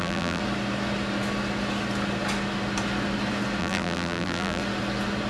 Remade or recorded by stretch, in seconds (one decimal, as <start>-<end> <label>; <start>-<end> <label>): 0.0-0.4 remade; 0.4-3.6 recorded; 3.6-4.6 remade; 4.6-5.3 recorded